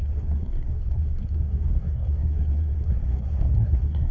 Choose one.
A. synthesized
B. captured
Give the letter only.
A